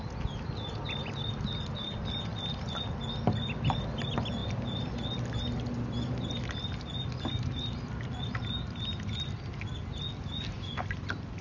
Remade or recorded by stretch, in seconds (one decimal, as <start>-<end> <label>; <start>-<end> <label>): 0.0-11.4 recorded

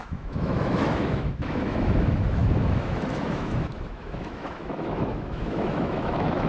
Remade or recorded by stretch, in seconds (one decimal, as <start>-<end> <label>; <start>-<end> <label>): 0.0-6.5 remade